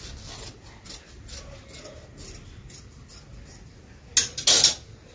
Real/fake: real